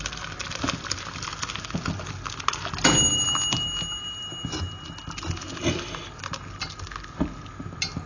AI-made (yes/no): no